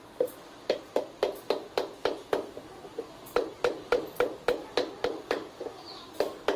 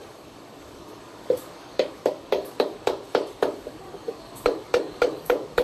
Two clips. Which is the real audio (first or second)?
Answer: first